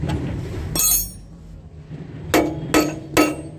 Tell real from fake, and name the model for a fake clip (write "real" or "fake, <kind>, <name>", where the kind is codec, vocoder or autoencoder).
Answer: real